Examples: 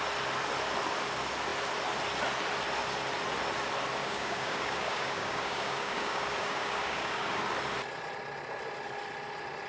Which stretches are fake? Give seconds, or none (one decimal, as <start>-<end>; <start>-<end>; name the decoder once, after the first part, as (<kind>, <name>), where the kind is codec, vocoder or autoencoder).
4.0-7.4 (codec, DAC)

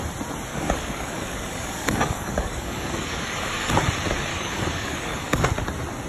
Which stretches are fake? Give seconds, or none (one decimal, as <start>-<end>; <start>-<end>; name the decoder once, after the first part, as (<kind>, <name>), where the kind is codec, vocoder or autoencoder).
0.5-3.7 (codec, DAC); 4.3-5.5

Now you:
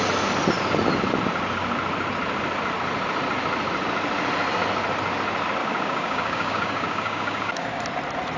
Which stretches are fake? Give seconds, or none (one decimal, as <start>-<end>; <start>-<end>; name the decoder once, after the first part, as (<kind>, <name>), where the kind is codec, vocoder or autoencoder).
5.6-7.8 (codec, DAC)

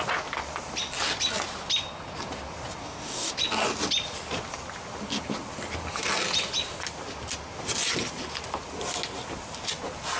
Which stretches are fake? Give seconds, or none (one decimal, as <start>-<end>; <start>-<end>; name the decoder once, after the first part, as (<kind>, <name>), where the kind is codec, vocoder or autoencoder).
2.8-3.3 (codec, DAC)

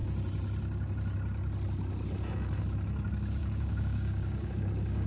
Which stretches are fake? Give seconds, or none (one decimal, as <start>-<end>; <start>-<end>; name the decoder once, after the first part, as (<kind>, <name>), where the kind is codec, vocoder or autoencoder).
3.4-5.1 (codec, DAC)

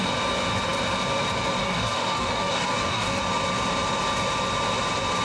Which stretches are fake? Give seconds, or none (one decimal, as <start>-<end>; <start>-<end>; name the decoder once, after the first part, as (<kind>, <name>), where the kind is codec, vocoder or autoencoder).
1.6-3.2 (codec, DAC)

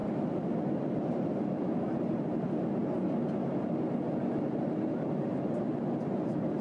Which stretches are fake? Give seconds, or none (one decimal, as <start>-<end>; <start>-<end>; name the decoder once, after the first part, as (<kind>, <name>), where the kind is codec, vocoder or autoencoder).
none

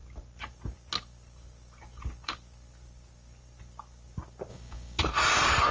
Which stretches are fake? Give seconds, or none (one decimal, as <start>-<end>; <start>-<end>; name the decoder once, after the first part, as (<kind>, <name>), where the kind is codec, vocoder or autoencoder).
4.5-5.0 (codec, DAC)